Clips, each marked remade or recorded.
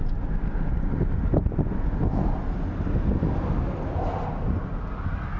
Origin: recorded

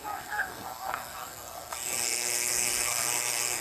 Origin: remade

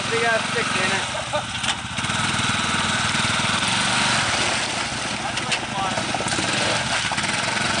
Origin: recorded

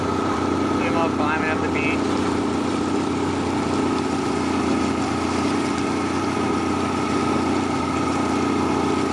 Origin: recorded